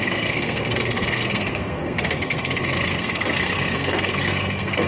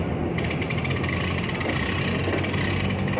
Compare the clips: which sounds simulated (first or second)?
first